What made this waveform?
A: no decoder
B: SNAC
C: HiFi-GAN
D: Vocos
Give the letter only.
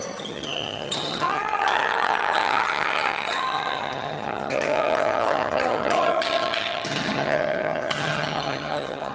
C